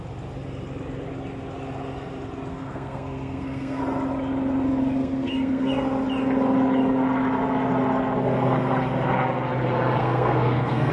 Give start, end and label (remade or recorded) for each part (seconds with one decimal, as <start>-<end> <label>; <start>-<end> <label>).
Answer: 0.0-2.5 recorded; 2.5-3.8 remade; 3.8-5.0 recorded; 5.0-5.7 remade; 5.7-10.0 recorded; 10.0-10.9 remade